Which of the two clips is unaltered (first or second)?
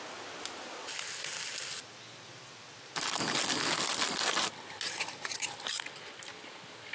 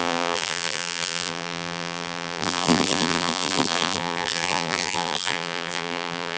first